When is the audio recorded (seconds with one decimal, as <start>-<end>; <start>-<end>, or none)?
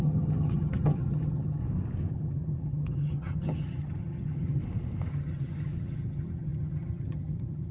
1.6-2.1; 4.6-5.1